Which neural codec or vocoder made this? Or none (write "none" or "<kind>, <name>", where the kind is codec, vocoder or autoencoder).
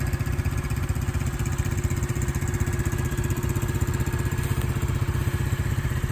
none